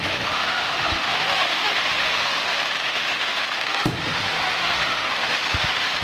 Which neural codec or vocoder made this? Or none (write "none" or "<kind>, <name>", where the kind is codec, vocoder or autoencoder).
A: autoencoder, DAC-VAE